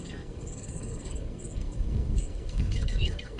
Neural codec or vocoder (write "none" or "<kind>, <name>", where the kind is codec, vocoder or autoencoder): codec, SNAC